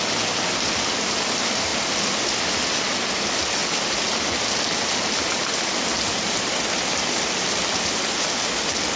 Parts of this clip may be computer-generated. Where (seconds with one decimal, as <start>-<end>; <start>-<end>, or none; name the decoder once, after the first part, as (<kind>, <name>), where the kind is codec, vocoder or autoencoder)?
none